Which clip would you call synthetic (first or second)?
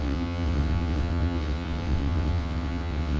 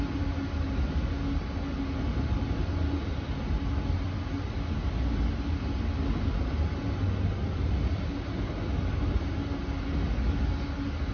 first